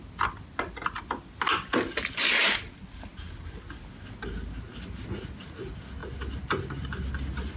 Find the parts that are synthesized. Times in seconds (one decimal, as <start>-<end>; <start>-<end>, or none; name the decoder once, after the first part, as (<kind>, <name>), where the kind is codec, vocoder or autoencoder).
none

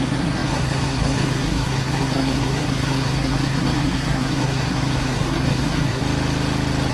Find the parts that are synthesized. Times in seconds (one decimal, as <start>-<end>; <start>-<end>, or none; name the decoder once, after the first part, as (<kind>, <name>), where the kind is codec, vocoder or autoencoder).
0.0-6.0 (codec, SNAC)

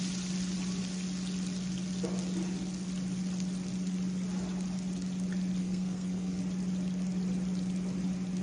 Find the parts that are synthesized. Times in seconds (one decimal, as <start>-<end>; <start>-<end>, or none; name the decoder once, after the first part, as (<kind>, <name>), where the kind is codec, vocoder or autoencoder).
5.6-6.4 (codec, SNAC)

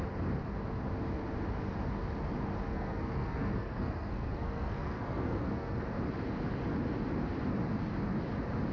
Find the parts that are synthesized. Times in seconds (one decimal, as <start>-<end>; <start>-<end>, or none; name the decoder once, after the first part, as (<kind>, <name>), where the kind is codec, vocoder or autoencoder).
2.7-5.8 (codec, SNAC)

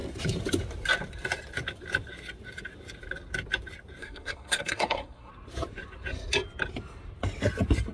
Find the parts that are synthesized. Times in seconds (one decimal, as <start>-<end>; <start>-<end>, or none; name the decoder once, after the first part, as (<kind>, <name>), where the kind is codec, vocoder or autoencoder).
4.0-5.3 (codec, SNAC)

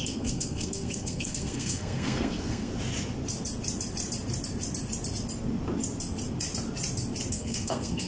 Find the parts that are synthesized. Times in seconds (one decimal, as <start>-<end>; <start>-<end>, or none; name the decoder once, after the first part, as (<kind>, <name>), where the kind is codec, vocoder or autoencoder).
0.0-2.7 (codec, SNAC); 7.3-8.1